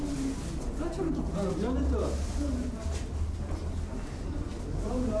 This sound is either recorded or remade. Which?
recorded